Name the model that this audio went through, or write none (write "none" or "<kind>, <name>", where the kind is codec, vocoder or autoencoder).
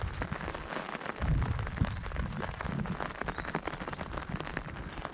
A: none